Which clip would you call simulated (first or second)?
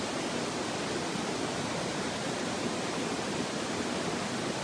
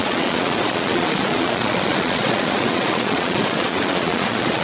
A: second